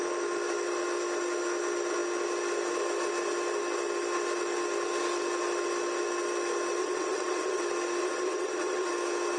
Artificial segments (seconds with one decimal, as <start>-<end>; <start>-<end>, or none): 6.8-7.6; 8.0-8.9